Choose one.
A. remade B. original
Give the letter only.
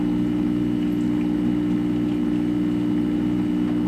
B